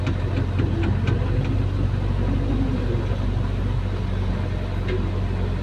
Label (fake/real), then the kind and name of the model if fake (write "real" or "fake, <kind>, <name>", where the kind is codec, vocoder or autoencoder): real